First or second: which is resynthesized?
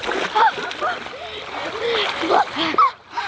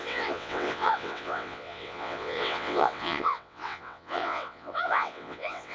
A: second